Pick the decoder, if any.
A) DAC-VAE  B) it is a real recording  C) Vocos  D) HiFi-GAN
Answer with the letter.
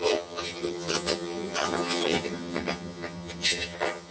D